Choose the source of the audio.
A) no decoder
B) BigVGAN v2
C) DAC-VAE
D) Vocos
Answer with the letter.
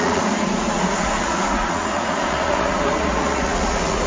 D